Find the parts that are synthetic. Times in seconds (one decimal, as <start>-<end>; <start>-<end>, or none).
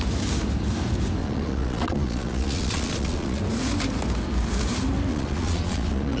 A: 1.2-3.4; 5.1-6.2